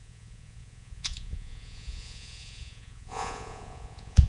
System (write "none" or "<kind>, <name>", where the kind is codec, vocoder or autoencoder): vocoder, Vocos